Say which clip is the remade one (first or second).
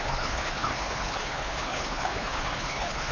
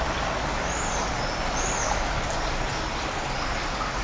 first